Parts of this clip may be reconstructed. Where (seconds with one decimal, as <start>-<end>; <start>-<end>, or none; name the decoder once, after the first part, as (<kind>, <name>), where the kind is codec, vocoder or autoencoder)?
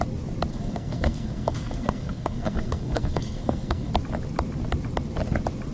0.5-3.9 (codec, SNAC)